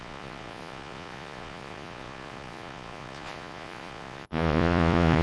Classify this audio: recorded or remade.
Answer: remade